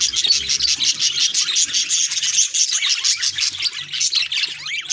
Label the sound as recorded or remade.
recorded